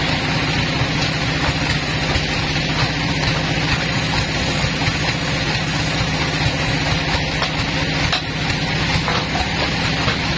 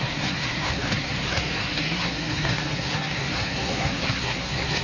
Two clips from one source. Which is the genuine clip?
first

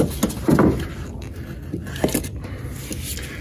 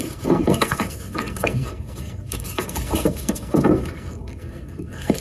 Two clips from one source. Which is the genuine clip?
first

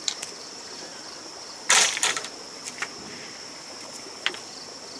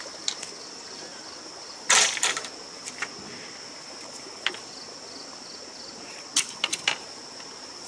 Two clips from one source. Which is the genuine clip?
second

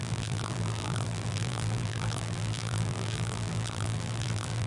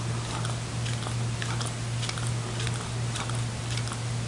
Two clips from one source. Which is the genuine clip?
second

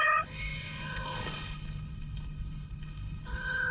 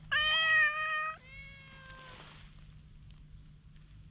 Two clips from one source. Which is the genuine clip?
second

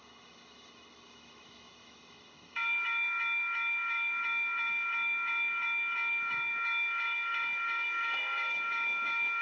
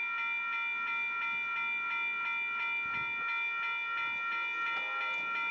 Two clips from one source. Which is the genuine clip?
second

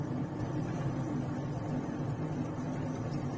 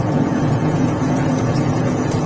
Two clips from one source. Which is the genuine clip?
first